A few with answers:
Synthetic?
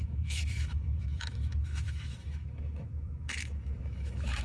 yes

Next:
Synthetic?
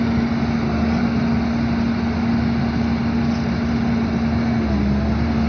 no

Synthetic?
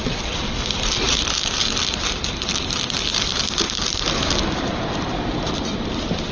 yes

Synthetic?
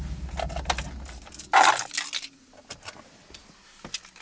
no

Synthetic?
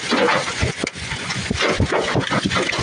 yes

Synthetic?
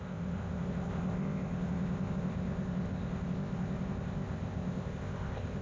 yes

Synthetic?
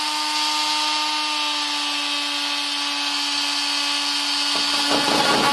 no